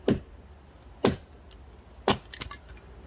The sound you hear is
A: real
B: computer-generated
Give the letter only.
A